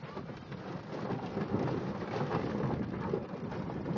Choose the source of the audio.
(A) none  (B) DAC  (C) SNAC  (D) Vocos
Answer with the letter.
A